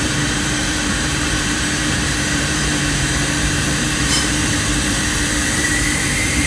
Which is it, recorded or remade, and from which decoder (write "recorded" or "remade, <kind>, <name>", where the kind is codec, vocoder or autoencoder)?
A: remade, vocoder, BigVGAN v2